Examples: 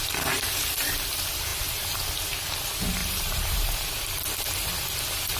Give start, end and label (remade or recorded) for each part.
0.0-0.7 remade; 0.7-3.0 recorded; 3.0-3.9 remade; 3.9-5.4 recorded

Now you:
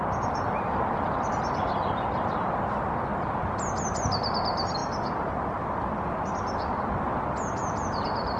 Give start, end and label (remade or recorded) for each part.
0.0-8.4 recorded

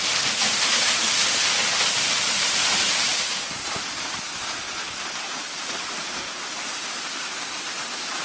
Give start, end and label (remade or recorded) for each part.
0.0-6.0 remade; 6.0-8.2 recorded

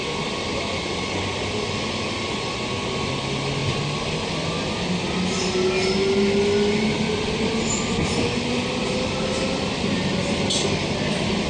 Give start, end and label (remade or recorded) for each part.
0.0-0.5 recorded; 0.5-1.8 remade; 1.8-11.5 recorded

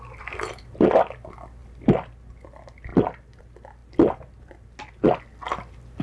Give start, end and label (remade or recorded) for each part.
0.0-3.8 recorded; 3.8-4.8 remade; 4.8-6.0 recorded

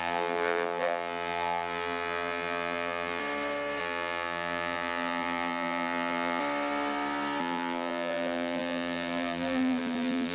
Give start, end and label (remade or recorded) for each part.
0.0-3.2 remade; 3.2-3.8 recorded; 3.8-6.4 remade; 6.4-7.4 recorded; 7.4-10.3 remade